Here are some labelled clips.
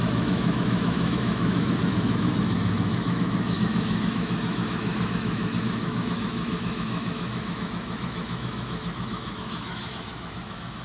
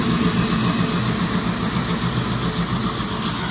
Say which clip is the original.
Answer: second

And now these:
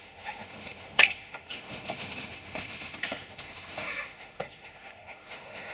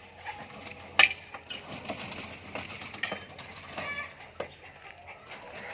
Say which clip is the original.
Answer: second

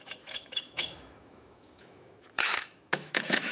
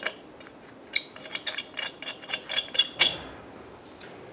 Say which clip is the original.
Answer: second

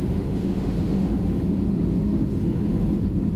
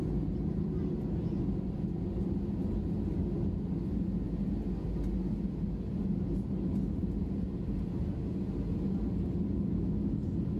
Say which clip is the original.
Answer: second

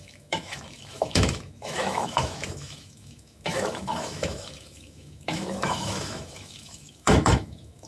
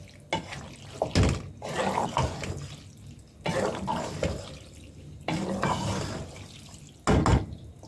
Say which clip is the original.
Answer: second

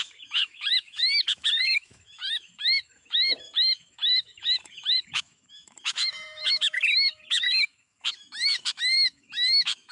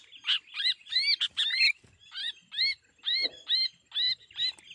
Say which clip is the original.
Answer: second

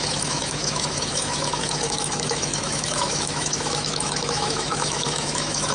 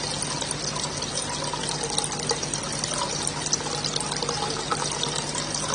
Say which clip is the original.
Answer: second